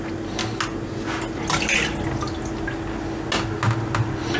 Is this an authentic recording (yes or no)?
yes